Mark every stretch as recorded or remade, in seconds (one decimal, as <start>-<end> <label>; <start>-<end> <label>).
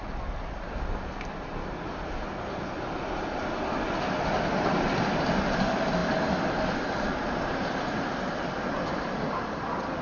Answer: 0.0-10.0 recorded